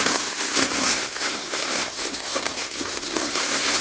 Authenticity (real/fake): fake